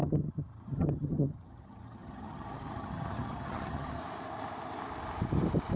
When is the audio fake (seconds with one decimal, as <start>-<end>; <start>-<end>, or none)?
0.0-4.0